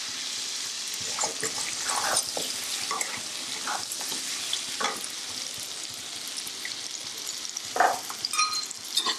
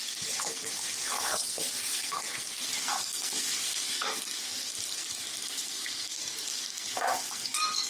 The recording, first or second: first